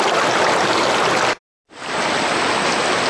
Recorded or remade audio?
recorded